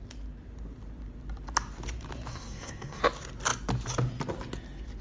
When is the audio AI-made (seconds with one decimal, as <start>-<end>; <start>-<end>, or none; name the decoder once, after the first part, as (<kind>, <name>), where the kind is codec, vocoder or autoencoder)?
2.3-3.0 (codec, SNAC)